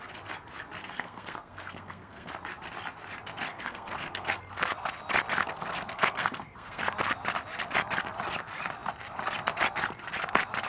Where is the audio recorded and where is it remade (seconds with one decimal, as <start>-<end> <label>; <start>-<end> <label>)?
0.0-0.8 recorded; 0.8-2.3 remade; 2.3-3.5 recorded; 3.5-4.4 remade; 4.4-5.4 recorded; 5.4-6.8 remade; 6.8-10.7 recorded